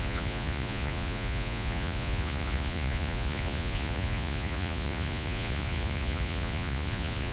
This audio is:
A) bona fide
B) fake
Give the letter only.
B